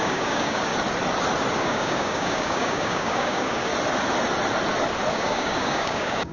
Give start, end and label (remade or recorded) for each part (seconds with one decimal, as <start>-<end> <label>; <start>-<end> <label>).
0.0-0.7 remade; 0.7-1.6 recorded; 1.6-3.7 remade; 3.7-5.1 recorded; 5.1-6.3 remade

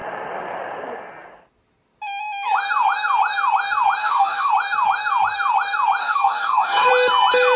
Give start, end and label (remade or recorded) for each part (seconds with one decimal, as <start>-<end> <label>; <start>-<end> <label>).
0.0-4.0 recorded; 4.0-4.5 remade; 4.5-6.0 recorded; 6.0-6.9 remade; 6.9-7.6 recorded